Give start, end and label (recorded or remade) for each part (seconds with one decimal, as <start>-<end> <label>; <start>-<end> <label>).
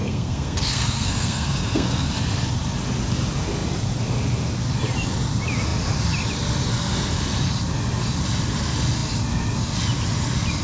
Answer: 0.0-2.1 remade; 2.1-10.6 recorded